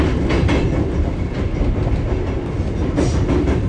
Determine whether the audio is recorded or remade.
recorded